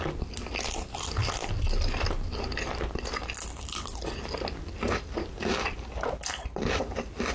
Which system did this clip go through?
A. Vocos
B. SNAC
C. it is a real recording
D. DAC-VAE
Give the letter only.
C